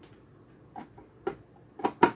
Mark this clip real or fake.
real